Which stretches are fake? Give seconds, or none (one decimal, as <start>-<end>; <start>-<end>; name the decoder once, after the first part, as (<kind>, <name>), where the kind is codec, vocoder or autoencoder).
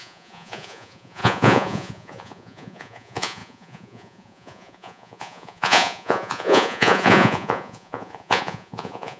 0.0-9.2 (vocoder, Vocos)